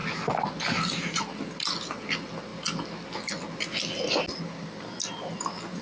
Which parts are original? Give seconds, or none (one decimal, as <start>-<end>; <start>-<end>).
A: 0.0-5.8